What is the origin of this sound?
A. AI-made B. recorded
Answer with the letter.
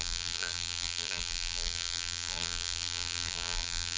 A